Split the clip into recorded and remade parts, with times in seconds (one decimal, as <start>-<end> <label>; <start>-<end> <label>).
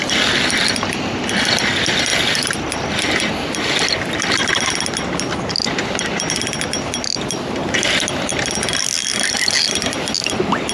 0.0-10.7 recorded